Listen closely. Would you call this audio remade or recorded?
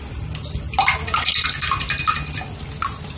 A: recorded